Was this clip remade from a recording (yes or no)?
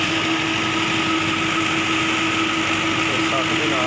no